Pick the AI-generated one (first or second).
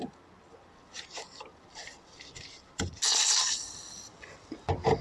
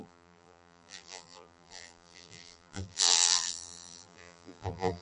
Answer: second